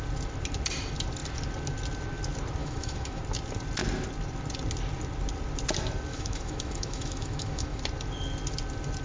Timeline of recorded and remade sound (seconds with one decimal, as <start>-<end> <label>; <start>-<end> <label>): 0.0-2.6 recorded; 2.6-3.2 remade; 3.2-6.1 recorded; 6.1-7.8 remade; 7.8-9.0 recorded